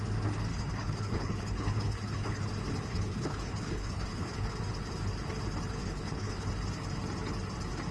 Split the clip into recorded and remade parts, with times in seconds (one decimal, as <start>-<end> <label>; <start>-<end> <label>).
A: 0.0-0.5 recorded; 0.5-2.4 remade; 2.4-2.9 recorded; 2.9-4.6 remade; 4.6-5.8 recorded; 5.8-6.5 remade; 6.5-7.9 recorded